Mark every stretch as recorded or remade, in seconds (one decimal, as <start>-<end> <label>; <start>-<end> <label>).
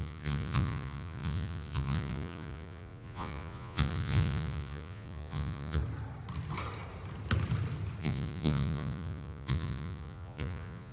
0.0-5.8 remade; 5.8-8.0 recorded; 8.0-10.9 remade